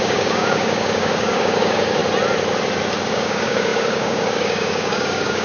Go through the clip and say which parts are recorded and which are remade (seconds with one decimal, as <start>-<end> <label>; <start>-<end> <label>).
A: 0.0-2.0 remade; 2.0-3.1 recorded; 3.1-5.4 remade